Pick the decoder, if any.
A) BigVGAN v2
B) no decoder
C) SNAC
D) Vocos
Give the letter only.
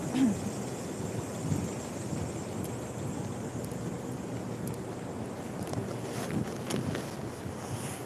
B